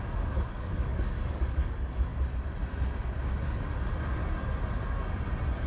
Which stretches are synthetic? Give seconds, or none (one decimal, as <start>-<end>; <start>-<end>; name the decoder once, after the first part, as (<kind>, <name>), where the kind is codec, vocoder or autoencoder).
0.0-2.1 (codec, DAC)